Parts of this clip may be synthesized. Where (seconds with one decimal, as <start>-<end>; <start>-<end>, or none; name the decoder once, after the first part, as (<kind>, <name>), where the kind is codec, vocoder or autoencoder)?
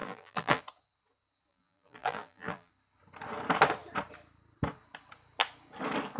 0.0-0.6 (vocoder, BigVGAN v2); 1.5-2.7